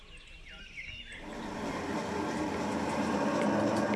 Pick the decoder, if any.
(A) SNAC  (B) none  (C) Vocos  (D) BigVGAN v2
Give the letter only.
B